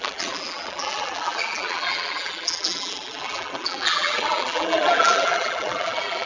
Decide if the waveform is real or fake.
fake